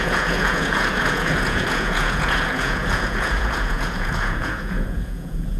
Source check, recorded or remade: remade